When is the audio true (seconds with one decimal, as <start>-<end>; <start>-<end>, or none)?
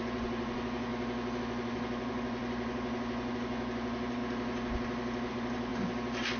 0.9-1.4; 4.2-5.3; 5.7-6.4